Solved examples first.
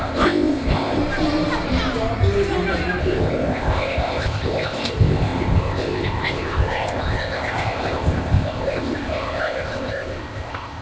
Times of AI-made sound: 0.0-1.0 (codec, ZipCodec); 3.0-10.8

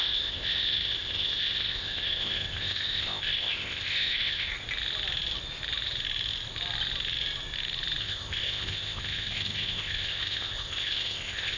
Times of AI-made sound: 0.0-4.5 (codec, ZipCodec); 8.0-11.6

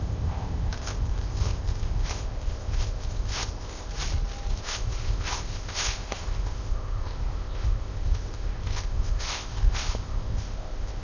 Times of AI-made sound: 0.0-3.9 (codec, ZipCodec); 4.5-11.0

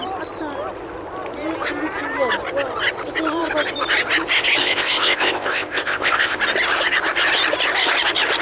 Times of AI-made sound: 4.6-6.4 (codec, ZipCodec)

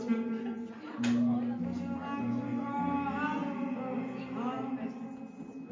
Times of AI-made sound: none

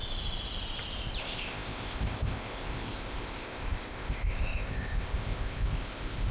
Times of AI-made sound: 1.2-6.3 (codec, ZipCodec)

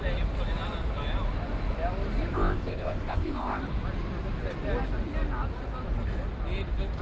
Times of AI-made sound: 2.3-3.6 (codec, ZipCodec)

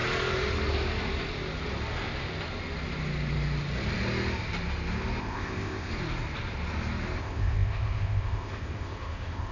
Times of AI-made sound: 5.2-5.9 (codec, ZipCodec); 7.2-9.5